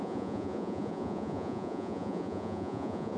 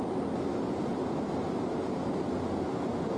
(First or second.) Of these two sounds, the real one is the second